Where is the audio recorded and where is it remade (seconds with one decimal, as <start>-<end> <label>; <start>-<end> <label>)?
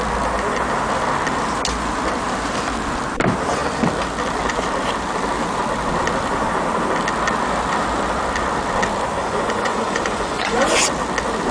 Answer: 0.0-9.2 recorded; 9.2-10.8 remade; 10.8-11.5 recorded